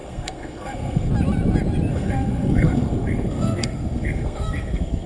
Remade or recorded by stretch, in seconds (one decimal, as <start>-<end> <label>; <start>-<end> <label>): 0.0-1.1 remade; 1.1-1.9 recorded; 1.9-5.1 remade